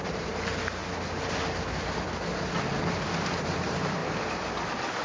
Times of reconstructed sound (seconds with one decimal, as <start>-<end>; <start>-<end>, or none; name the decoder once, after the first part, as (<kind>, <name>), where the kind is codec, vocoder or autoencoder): 0.0-0.8 (vocoder, BigVGAN v2); 3.4-4.0